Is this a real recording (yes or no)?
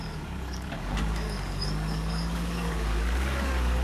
no